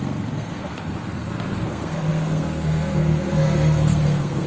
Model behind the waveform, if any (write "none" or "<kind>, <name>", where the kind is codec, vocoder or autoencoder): codec, SNAC